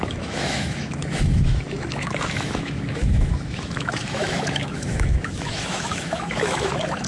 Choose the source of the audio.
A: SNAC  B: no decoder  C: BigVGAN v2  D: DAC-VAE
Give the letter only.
D